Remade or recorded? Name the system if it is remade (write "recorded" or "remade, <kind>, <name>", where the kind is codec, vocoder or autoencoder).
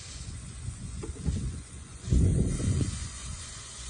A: remade, vocoder, Vocos